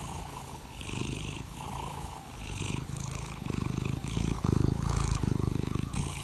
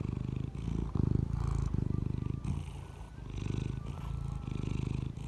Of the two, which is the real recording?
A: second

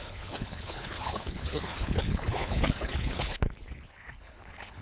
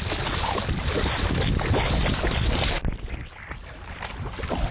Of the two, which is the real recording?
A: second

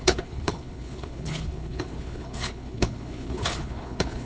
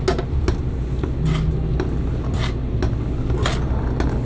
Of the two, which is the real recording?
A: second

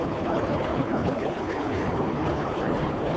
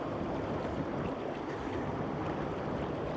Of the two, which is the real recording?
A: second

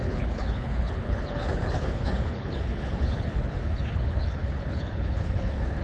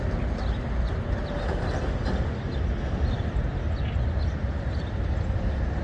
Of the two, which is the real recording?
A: second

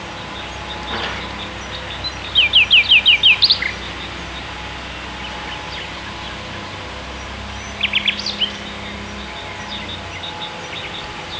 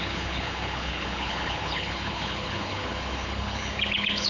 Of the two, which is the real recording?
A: first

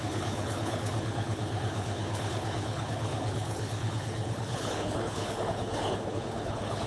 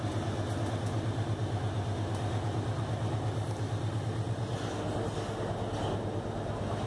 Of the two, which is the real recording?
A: second